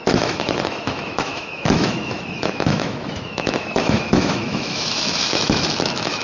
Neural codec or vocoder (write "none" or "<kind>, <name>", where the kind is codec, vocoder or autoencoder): autoencoder, DAC-VAE